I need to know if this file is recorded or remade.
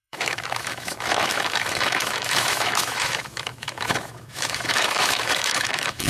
remade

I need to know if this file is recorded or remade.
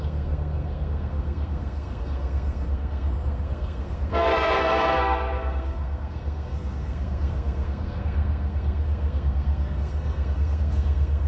remade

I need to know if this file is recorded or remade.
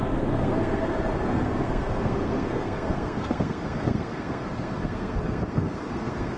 remade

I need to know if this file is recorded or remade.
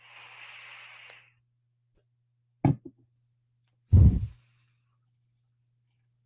recorded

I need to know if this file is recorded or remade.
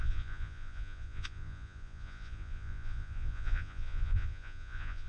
remade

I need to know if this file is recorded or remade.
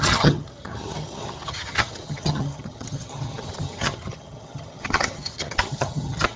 remade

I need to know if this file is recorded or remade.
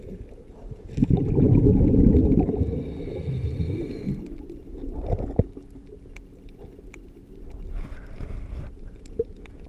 recorded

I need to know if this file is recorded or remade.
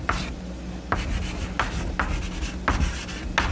recorded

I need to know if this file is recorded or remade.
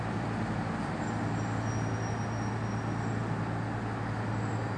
recorded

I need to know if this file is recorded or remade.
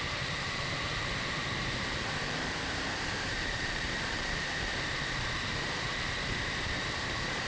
remade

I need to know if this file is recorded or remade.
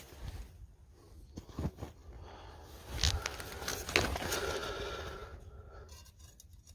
recorded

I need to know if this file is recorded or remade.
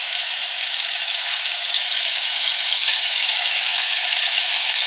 remade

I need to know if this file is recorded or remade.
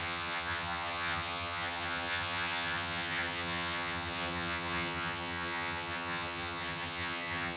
remade